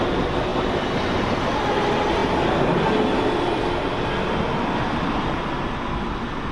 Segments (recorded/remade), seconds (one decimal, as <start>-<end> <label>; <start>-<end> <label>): 0.0-6.5 recorded